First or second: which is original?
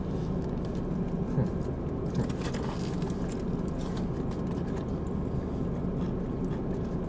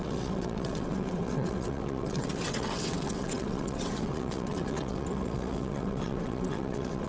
first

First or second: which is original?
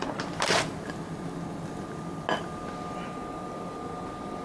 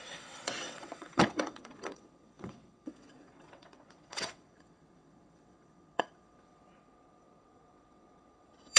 first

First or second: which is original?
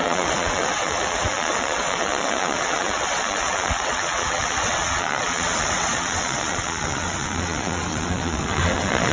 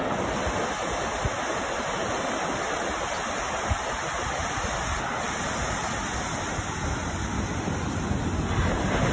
second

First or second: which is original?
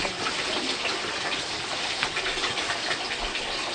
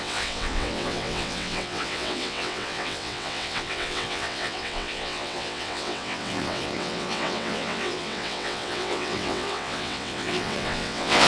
first